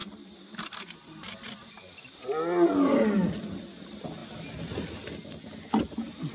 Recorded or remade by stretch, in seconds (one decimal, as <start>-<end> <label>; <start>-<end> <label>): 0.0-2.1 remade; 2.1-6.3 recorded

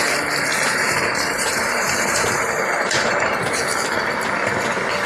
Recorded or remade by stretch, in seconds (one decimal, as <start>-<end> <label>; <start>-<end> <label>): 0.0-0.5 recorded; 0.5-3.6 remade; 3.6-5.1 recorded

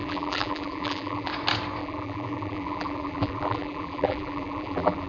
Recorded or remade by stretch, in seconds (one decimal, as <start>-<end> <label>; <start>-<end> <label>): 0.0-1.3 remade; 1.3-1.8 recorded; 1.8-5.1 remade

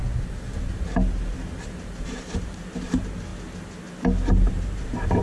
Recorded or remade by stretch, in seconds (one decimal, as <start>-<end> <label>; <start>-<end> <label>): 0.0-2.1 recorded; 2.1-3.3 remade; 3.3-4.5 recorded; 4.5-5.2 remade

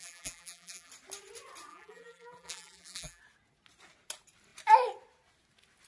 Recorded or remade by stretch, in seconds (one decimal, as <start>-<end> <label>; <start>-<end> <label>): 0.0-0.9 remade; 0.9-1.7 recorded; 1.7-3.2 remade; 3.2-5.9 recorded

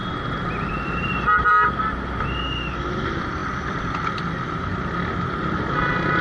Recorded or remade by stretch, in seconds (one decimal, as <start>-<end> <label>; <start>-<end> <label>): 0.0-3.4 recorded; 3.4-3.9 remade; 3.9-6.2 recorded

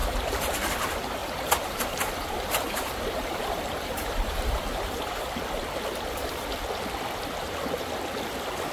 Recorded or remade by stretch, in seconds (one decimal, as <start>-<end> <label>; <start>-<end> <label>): 0.0-1.2 recorded; 1.2-5.4 remade; 5.4-8.7 recorded